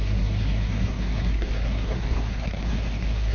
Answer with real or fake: fake